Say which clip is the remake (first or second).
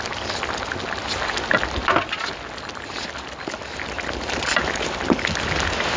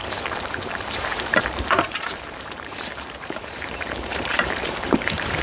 second